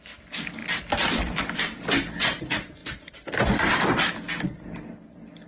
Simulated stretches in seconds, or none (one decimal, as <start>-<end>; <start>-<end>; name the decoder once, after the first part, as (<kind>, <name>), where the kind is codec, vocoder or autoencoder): 0.6-1.4 (vocoder, BigVGAN v2); 2.8-4.0